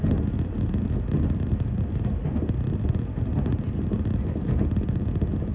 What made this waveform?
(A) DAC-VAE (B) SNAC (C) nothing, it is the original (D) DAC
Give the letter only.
C